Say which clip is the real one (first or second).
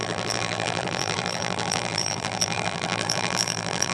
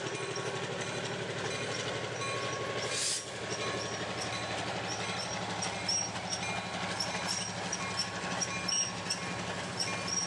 second